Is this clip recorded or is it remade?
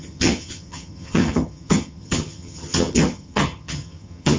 remade